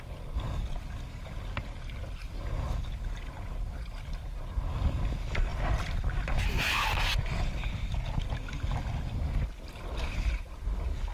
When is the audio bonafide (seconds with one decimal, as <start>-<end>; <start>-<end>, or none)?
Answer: 0.0-11.1